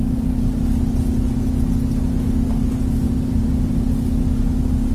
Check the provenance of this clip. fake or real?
real